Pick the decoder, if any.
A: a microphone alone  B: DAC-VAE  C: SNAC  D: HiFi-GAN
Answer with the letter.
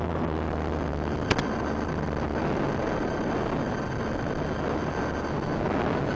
A